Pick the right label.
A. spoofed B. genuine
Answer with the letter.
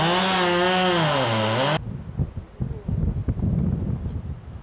B